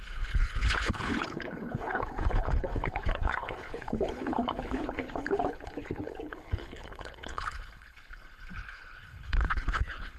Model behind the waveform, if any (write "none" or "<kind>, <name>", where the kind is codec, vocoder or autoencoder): codec, HILCodec